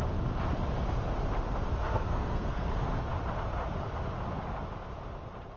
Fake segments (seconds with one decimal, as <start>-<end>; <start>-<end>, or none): 1.8-2.7